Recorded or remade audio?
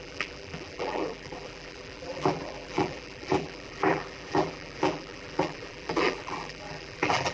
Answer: remade